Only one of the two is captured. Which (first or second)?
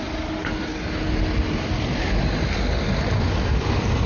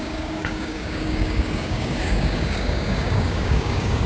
first